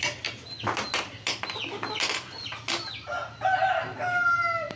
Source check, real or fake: real